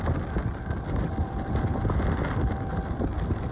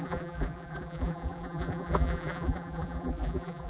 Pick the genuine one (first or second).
first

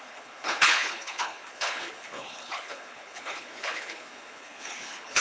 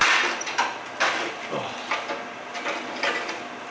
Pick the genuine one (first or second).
second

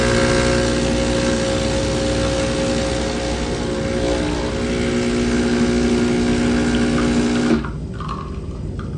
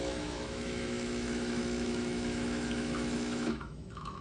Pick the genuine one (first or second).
first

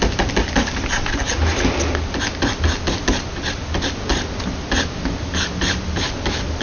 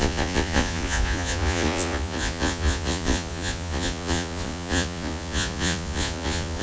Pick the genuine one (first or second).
first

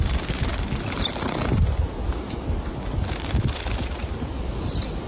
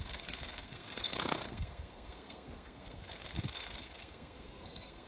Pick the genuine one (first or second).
first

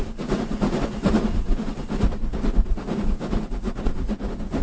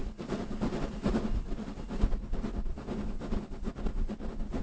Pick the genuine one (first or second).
second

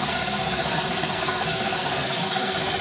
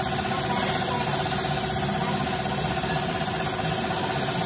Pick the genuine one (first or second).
second